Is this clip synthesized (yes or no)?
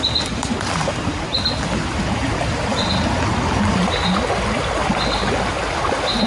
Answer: no